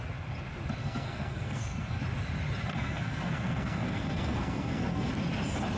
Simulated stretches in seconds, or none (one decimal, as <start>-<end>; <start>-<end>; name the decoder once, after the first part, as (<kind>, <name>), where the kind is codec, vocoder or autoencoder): 0.8-2.0 (codec, SNAC); 2.7-5.1